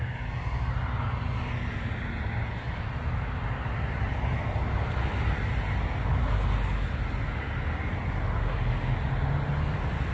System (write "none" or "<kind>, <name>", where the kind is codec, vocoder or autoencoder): none